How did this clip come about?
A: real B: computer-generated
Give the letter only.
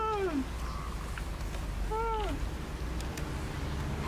A